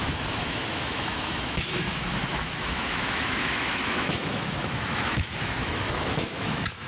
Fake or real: fake